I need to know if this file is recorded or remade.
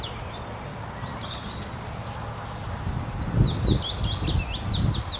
recorded